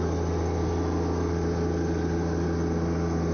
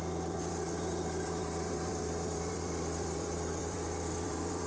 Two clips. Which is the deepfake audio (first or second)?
second